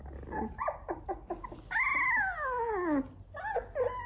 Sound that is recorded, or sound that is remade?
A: recorded